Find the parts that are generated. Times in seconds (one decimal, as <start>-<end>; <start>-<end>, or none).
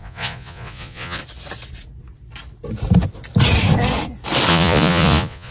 0.0-1.2; 4.5-5.5